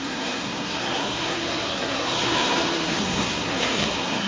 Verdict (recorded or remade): remade